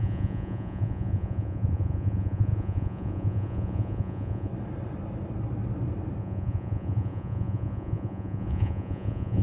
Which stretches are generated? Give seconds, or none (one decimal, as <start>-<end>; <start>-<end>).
0.0-4.5; 6.2-9.4